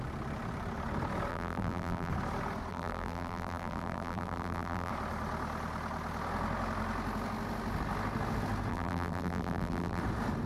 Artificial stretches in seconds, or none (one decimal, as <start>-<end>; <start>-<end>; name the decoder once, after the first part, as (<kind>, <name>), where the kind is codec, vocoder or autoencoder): 1.3-2.1 (vocoder, BigVGAN v2); 2.7-4.9; 8.7-10.0